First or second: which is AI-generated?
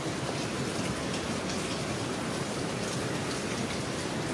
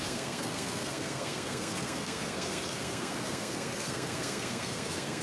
second